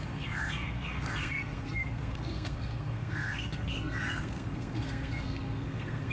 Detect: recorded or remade remade